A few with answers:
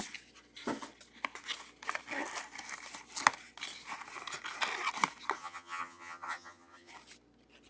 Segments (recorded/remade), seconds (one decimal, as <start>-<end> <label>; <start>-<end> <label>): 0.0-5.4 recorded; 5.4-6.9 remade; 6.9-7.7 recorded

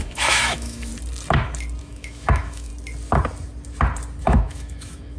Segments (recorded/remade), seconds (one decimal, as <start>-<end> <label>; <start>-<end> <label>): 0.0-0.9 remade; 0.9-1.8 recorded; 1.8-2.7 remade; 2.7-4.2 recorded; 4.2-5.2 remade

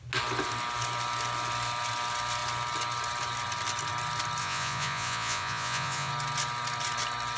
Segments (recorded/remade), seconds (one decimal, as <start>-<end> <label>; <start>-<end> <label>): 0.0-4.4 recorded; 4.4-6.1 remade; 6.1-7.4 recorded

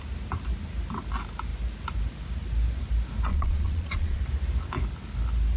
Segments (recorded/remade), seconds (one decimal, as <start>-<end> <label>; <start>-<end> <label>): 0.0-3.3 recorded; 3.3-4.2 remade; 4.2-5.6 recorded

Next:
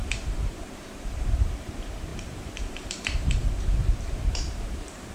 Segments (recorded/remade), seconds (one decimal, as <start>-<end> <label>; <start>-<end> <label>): 0.0-5.1 remade

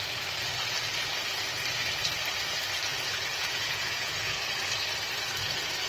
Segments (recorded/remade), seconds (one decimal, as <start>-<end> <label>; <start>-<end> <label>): 0.0-3.3 recorded; 3.3-4.4 remade; 4.4-5.9 recorded

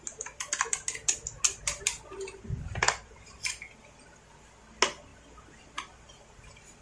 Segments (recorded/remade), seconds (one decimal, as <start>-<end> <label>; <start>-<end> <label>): 0.0-6.8 recorded